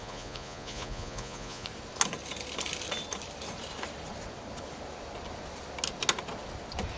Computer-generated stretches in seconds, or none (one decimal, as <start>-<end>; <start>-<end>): 0.0-1.7